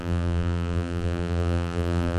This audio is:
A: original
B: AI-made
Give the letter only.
B